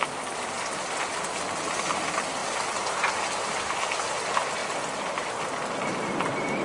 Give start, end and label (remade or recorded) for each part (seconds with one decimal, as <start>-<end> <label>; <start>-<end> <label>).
0.0-6.6 recorded